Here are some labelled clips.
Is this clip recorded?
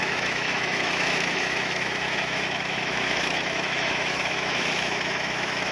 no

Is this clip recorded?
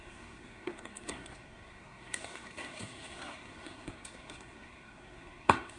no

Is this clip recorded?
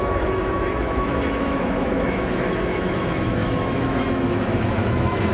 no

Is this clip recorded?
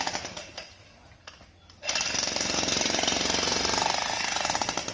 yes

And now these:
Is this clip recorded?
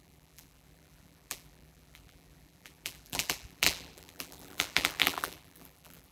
no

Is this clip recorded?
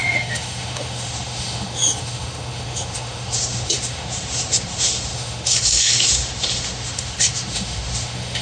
no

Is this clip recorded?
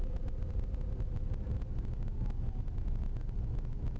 yes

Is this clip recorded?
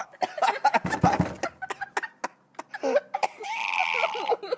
yes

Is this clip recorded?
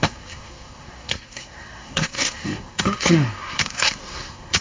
no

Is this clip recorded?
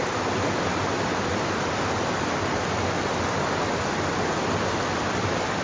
yes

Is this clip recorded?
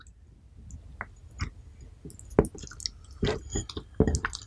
yes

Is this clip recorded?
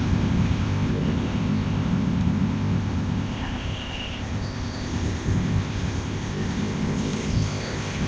no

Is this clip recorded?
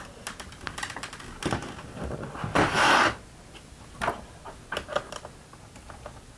yes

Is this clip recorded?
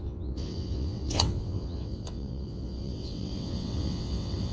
no